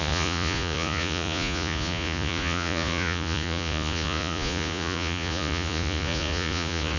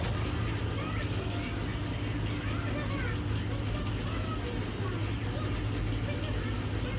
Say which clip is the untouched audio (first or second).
second